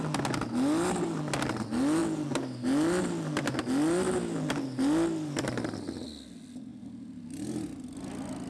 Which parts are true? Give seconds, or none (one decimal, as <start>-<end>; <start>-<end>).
0.0-8.5